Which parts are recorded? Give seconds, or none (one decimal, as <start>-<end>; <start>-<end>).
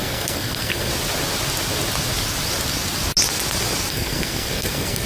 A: 0.9-3.9